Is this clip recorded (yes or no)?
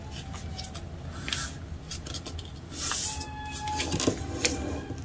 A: yes